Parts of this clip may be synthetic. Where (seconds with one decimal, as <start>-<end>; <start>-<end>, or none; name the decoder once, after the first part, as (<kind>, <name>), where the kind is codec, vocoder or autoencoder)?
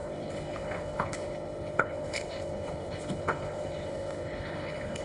0.0-5.0 (codec, HILCodec)